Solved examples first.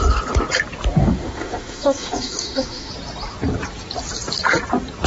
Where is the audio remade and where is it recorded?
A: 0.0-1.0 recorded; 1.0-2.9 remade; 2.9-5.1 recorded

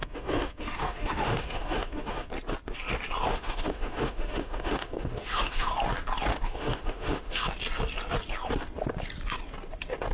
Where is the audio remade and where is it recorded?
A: 0.0-2.3 remade; 2.3-3.3 recorded; 3.3-5.7 remade; 5.7-6.3 recorded; 6.3-7.5 remade; 7.5-10.1 recorded

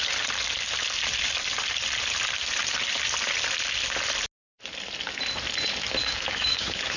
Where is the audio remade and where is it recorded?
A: 0.0-6.0 recorded; 6.0-7.0 remade